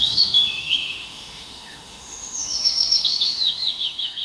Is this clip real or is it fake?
fake